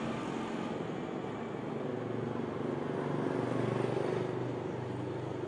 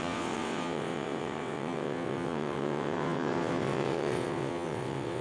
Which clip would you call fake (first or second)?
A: second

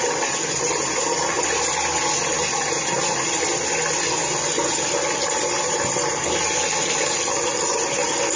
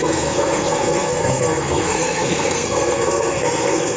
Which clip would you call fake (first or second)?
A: second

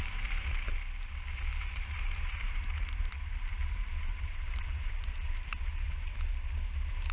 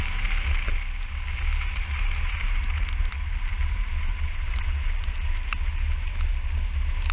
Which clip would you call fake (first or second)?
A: first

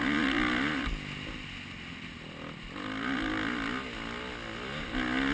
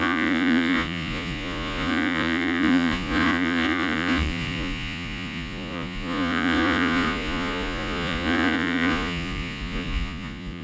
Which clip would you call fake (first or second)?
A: second